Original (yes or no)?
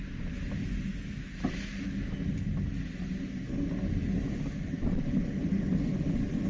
yes